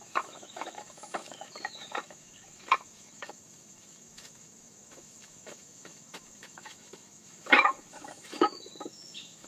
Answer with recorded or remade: remade